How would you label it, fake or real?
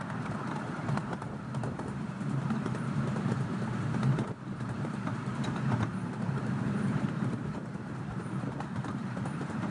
fake